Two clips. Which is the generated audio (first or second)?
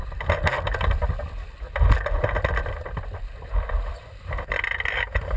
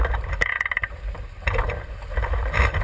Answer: second